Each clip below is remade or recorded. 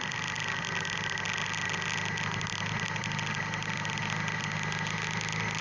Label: recorded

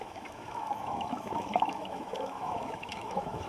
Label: remade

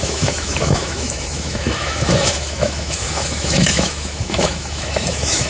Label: remade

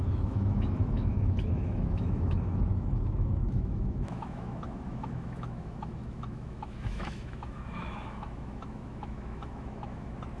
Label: remade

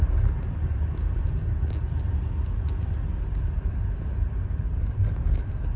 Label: recorded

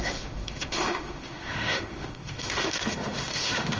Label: remade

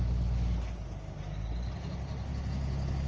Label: recorded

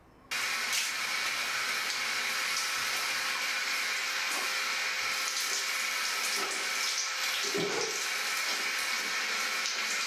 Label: recorded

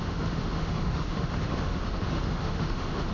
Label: remade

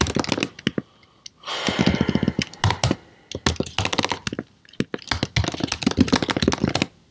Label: recorded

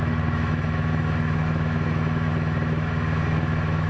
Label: remade